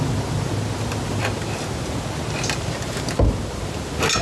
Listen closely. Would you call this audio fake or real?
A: real